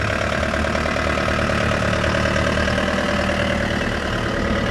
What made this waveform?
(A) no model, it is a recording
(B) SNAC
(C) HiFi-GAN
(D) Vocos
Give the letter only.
A